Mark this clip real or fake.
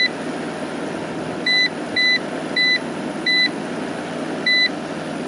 real